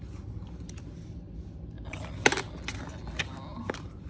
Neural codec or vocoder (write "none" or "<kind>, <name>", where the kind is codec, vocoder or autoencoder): none